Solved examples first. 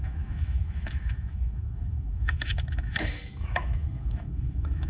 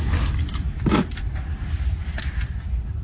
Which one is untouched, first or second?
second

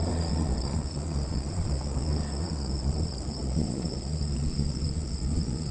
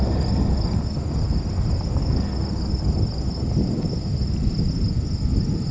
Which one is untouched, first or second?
second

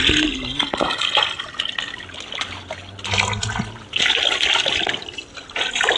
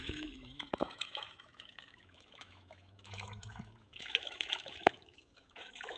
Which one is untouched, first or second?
first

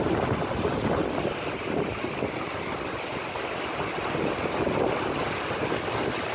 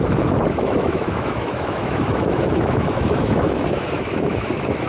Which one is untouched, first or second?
first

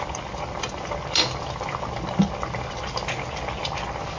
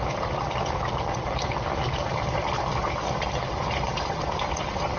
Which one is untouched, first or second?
first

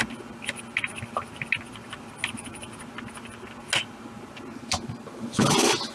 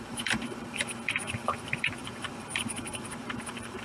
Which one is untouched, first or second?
first